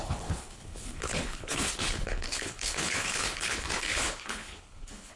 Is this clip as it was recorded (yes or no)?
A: no